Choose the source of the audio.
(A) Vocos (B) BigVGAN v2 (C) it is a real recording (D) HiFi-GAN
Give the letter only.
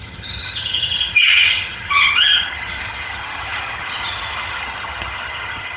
D